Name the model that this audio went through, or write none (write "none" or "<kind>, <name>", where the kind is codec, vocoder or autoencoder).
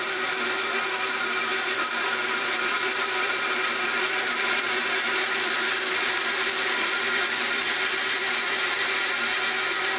vocoder, BigVGAN v2